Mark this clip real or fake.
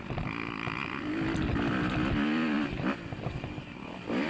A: real